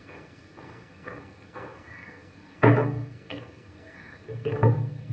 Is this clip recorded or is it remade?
remade